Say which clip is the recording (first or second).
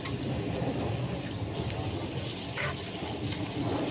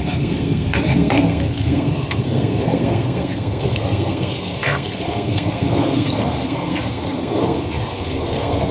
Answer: first